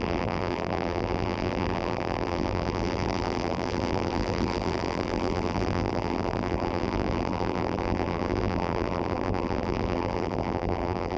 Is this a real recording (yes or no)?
no